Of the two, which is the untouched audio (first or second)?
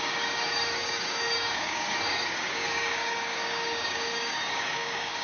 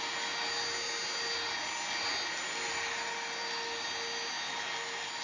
second